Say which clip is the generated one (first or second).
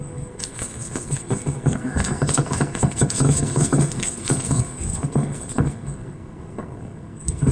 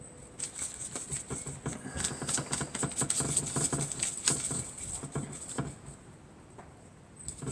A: first